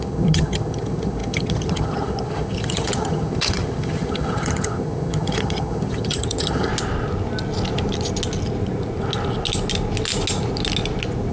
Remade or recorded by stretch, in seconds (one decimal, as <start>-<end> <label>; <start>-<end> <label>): 0.0-6.7 remade; 6.7-11.3 recorded